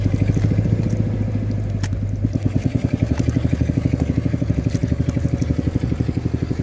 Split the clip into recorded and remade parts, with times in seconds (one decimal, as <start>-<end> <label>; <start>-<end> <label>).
0.0-6.6 recorded